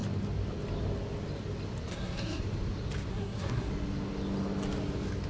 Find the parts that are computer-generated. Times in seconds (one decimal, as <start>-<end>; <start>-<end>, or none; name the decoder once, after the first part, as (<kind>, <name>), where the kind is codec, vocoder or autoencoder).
1.9-2.4 (codec, SNAC); 3.1-3.7